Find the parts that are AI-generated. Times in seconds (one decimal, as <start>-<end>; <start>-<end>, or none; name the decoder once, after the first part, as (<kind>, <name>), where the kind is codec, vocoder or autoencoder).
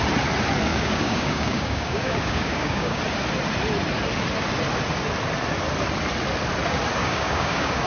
0.7-3.0 (codec, DAC); 7.0-7.9